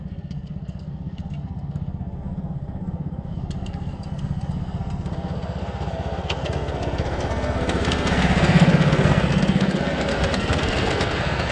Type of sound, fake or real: fake